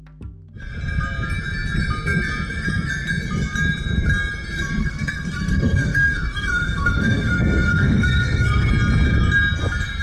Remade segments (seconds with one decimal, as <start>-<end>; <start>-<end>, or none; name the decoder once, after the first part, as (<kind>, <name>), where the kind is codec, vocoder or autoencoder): 4.8-8.7 (codec, SNAC)